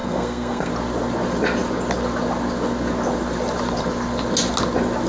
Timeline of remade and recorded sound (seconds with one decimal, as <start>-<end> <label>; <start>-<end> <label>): 0.0-0.7 remade; 0.7-5.1 recorded